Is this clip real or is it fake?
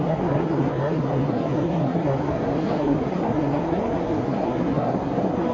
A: fake